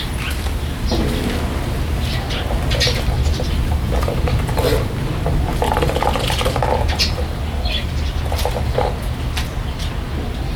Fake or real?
real